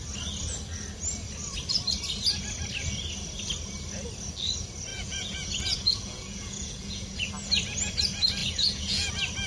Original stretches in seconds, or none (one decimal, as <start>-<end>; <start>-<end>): 0.0-4.9; 7.3-8.4; 9.1-9.5